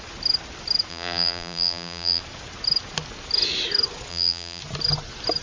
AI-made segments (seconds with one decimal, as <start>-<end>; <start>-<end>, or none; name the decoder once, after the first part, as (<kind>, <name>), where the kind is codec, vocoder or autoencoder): 0.9-2.2 (vocoder, BigVGAN v2); 4.1-4.6

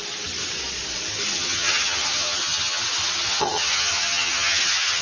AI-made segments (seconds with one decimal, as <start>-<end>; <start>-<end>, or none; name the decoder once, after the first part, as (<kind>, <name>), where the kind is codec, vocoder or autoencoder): 1.3-2.8 (vocoder, HiFi-GAN); 3.3-5.0

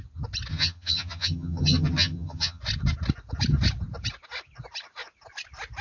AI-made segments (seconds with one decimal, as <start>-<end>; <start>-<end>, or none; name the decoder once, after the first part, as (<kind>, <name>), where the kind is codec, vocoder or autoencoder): 0.5-2.6 (vocoder, HiFi-GAN)

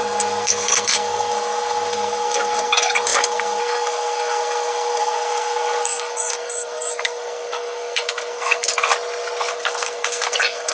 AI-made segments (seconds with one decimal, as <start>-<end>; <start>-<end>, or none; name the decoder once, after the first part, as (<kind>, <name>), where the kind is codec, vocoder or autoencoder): 0.0-8.9 (codec, SNAC); 9.5-10.7